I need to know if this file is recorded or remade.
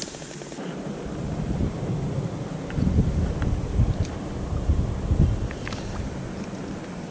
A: recorded